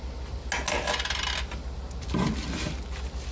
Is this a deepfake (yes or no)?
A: no